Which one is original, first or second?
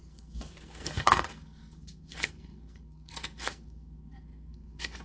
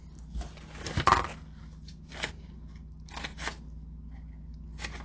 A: second